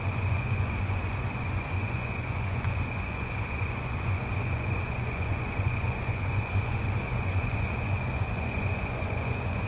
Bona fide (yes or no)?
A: no